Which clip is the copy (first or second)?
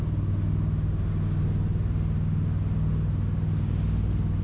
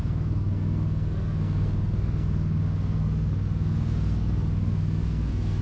second